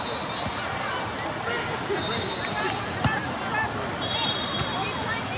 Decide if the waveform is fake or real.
real